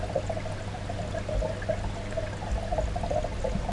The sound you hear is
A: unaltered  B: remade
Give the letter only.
A